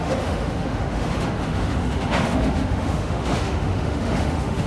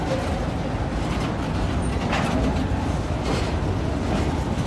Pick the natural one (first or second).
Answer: second